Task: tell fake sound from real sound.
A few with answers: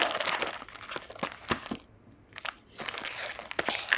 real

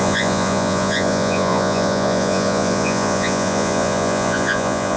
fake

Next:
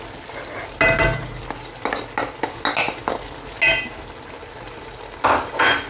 real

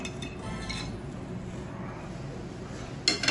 real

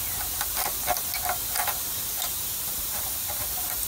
real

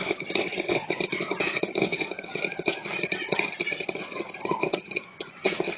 fake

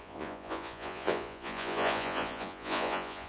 fake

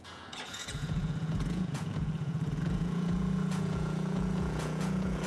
fake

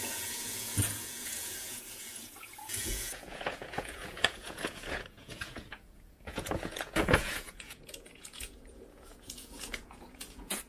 fake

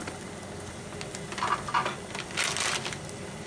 real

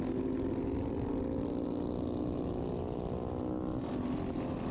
real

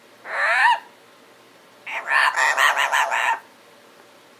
real